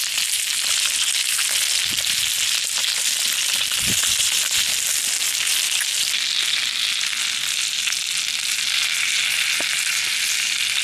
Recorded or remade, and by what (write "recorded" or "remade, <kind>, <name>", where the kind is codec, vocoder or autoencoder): recorded